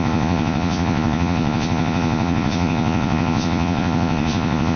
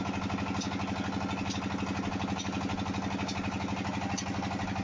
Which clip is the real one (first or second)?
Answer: second